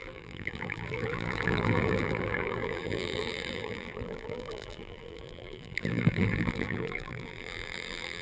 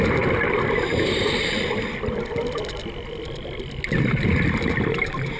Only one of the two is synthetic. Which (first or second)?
first